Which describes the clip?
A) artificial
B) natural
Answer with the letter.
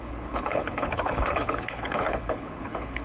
A